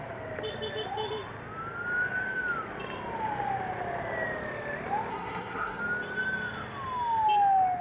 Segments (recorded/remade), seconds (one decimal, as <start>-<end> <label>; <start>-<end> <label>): 0.0-5.1 recorded; 5.1-5.8 remade; 5.8-7.8 recorded